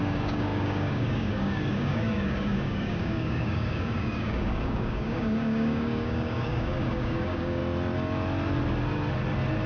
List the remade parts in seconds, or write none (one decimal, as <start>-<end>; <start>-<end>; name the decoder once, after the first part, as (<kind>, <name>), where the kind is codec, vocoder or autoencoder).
0.0-7.6 (codec, DAC)